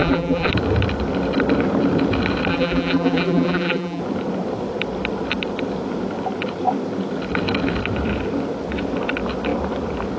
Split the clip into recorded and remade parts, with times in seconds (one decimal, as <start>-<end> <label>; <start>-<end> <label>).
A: 0.0-0.5 remade; 0.5-2.5 recorded; 2.5-4.0 remade; 4.0-10.2 recorded